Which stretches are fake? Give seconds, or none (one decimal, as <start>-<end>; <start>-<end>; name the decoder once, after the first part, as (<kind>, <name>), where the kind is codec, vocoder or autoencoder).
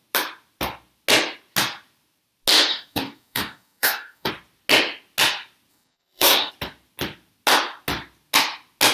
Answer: 2.7-4.3 (codec, DAC); 5.7-6.5